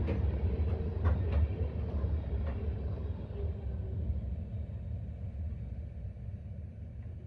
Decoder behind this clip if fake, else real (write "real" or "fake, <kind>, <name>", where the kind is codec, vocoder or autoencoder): real